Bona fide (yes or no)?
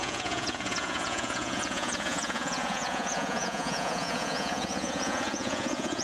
no